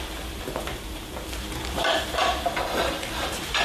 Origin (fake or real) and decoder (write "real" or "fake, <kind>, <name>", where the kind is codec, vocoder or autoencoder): fake, vocoder, BigVGAN v2